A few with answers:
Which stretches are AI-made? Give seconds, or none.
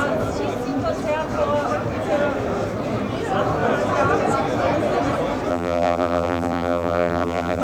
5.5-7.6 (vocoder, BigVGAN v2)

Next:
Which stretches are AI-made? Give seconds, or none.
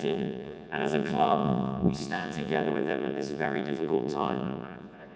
0.0-5.2 (vocoder, Vocos)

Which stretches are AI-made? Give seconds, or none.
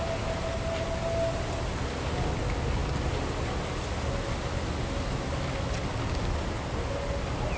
none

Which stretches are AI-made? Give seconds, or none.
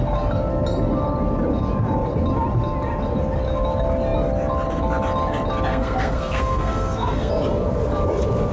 5.7-7.3 (codec, SNAC)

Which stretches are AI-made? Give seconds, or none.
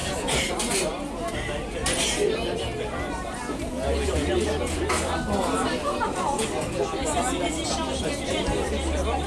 none